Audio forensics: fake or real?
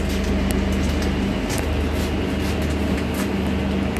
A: real